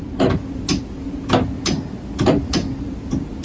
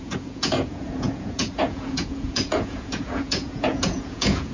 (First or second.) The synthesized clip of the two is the second